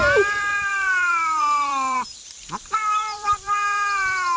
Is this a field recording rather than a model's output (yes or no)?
no